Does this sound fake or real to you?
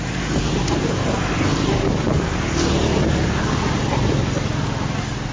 real